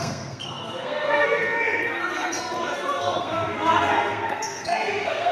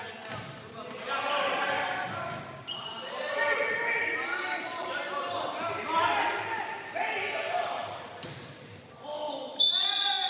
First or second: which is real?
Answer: second